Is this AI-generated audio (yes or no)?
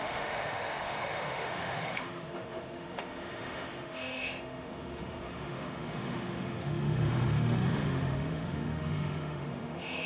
yes